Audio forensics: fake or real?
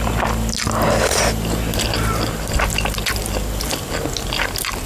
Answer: real